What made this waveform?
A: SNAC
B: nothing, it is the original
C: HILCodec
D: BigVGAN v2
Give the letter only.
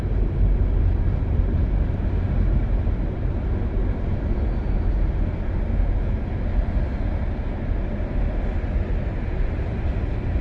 B